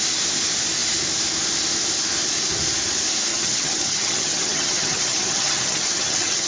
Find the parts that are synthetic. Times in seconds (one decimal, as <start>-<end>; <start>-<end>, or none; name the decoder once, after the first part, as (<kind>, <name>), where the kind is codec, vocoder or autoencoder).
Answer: 3.3-6.5 (vocoder, HiFi-GAN)